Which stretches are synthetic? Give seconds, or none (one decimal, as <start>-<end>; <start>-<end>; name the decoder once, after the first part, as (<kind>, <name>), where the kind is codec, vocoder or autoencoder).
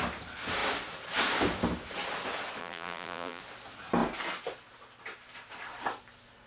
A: 2.6-3.4 (vocoder, BigVGAN v2)